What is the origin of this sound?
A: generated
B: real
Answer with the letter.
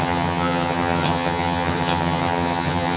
A